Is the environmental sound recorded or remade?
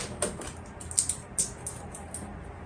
recorded